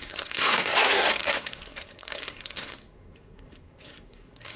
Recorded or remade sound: remade